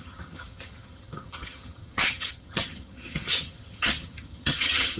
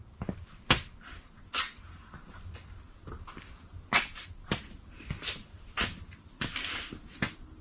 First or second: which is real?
second